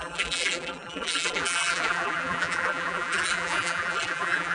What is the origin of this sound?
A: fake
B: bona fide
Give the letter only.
A